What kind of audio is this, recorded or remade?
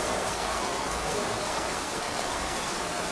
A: remade